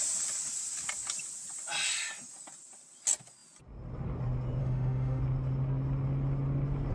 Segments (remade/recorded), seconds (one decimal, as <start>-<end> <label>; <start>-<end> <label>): 0.0-4.6 recorded; 4.6-5.2 remade; 5.2-6.9 recorded